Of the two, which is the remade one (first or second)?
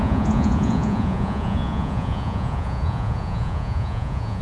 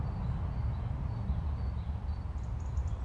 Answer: first